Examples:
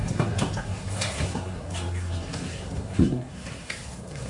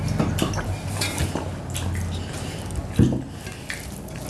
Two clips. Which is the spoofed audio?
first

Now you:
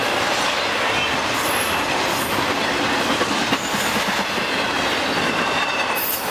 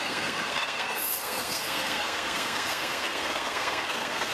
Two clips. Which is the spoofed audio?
second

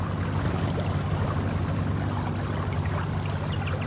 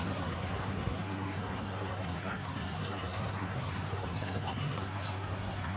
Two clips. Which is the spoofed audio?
second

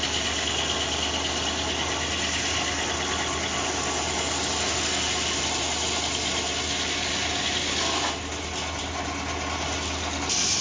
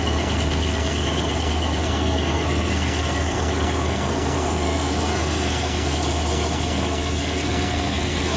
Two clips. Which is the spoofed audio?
second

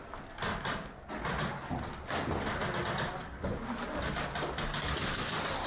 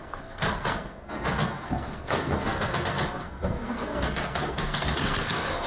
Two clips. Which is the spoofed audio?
second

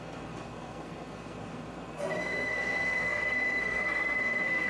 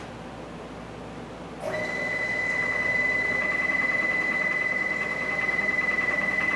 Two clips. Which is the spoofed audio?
first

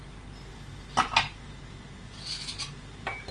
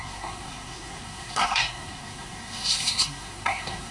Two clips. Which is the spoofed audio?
second